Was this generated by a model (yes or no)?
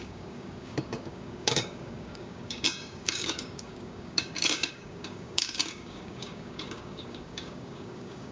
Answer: yes